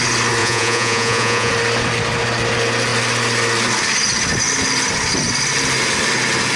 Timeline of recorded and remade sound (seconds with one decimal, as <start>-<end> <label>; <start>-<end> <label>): 0.0-0.4 recorded; 0.4-1.5 remade; 1.5-6.6 recorded

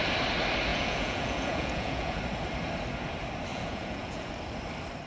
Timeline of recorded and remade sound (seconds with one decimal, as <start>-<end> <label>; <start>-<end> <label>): 0.0-0.7 recorded; 0.7-2.2 remade; 2.2-3.5 recorded; 3.5-4.3 remade; 4.3-5.1 recorded

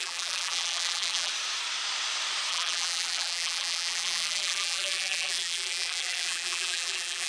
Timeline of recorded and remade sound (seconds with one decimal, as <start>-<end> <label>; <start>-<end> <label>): 0.0-1.3 remade; 1.3-2.5 recorded; 2.5-7.3 remade